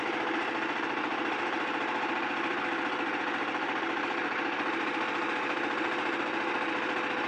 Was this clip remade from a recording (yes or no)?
yes